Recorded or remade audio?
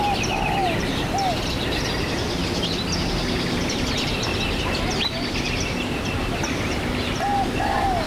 remade